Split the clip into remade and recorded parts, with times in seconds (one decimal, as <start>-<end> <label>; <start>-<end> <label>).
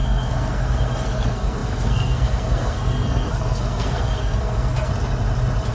0.0-4.9 remade; 4.9-5.7 recorded